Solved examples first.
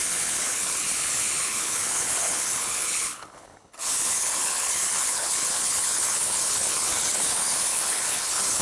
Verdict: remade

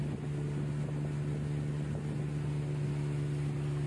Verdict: recorded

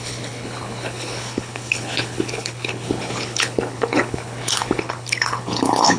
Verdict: remade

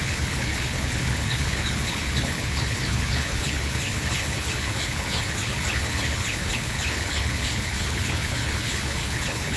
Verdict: remade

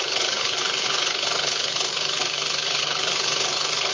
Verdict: remade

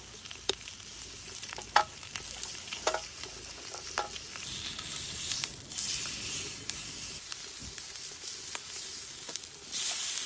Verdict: recorded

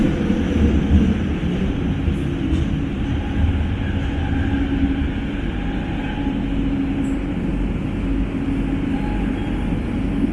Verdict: recorded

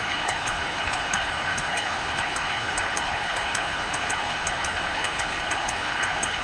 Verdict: remade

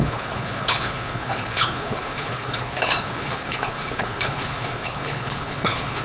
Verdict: remade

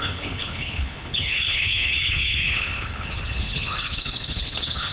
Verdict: remade